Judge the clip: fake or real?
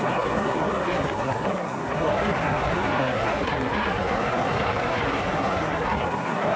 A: fake